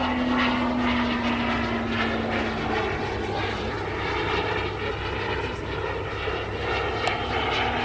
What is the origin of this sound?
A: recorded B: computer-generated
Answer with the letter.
A